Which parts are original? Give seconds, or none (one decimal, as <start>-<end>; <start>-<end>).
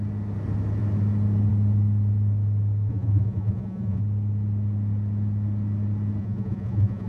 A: 0.0-2.9; 4.0-6.2